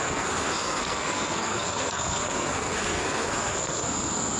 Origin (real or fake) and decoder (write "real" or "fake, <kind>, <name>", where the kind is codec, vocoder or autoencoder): fake, codec, SNAC